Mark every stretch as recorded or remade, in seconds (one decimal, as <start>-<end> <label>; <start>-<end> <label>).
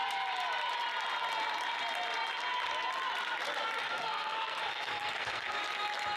0.0-3.8 recorded; 3.8-5.6 remade; 5.6-6.2 recorded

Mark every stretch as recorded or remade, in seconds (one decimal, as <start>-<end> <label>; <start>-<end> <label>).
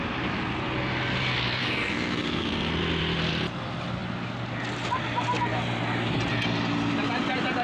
0.0-1.6 recorded; 1.6-2.7 remade; 2.7-7.6 recorded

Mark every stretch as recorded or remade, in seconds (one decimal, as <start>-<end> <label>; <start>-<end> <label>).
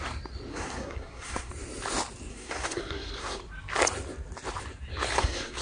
0.0-0.5 recorded; 0.5-1.5 remade; 1.5-2.3 recorded; 2.3-3.4 remade; 3.4-5.1 recorded; 5.1-5.6 remade